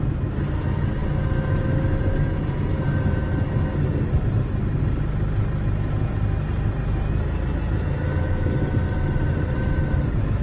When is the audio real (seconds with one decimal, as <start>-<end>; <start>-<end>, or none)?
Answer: 0.0-10.4